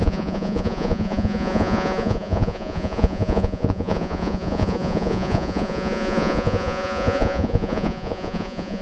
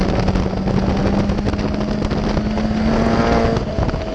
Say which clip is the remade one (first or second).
first